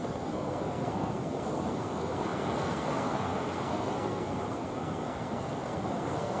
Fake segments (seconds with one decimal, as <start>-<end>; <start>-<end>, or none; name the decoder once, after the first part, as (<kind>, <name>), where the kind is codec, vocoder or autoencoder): 0.0-6.4 (codec, SNAC)